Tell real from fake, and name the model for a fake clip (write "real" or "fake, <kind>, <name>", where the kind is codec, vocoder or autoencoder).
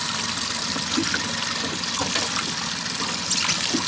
real